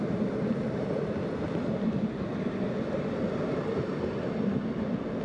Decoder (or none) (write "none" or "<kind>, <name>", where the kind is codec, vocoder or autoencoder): none